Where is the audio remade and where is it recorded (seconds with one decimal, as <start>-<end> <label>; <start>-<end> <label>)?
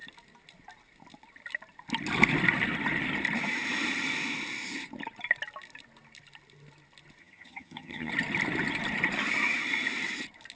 0.0-7.2 recorded; 7.2-8.1 remade; 8.1-10.6 recorded